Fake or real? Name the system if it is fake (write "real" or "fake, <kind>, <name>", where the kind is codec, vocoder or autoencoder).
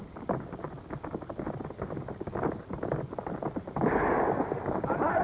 real